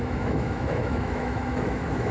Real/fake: fake